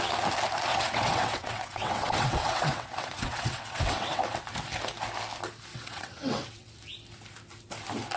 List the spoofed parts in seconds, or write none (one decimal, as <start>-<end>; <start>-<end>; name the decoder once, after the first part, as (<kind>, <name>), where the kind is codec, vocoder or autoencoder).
0.7-4.2 (vocoder, WaveNeXt); 5.7-6.7

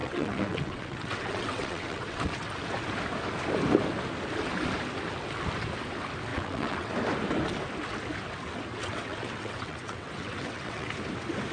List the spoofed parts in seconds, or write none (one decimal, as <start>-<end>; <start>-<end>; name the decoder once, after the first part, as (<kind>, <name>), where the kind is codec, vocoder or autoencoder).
0.0-2.5 (vocoder, WaveNeXt); 6.3-6.9; 8.7-10.9

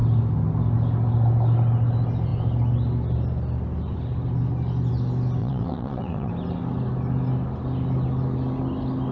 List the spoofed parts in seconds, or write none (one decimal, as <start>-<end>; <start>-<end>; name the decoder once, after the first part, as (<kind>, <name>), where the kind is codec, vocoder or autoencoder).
5.4-6.3 (vocoder, WaveNeXt)

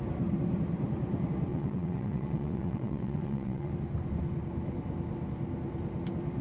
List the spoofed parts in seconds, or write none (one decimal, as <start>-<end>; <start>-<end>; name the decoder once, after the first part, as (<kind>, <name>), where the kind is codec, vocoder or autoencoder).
1.5-3.7 (vocoder, WaveNeXt)

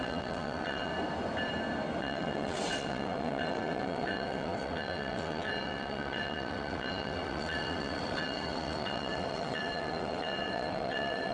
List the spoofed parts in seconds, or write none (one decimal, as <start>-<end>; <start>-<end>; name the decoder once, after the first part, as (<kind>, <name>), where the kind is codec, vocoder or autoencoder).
0.0-0.9 (vocoder, WaveNeXt); 2.0-11.3

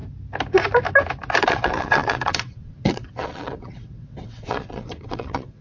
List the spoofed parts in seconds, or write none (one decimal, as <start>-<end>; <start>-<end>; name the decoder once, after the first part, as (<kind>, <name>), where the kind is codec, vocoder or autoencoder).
1.4-5.6 (vocoder, WaveNeXt)

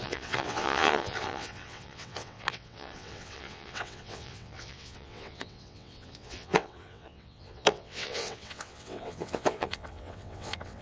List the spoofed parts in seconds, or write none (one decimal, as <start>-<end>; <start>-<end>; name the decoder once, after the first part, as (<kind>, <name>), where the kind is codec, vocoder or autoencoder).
0.0-10.8 (vocoder, WaveNeXt)

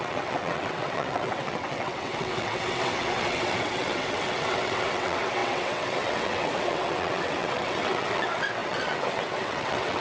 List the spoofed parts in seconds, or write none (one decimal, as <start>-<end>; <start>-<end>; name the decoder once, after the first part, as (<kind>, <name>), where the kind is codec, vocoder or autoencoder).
0.0-10.0 (vocoder, WaveNeXt)